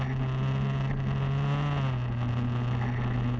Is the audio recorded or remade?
recorded